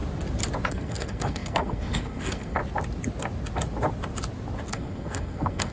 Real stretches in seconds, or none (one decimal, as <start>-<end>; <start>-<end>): 0.0-0.7; 2.6-4.7